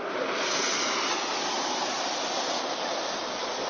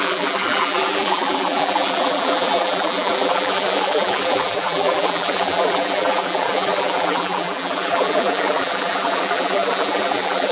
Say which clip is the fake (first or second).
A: second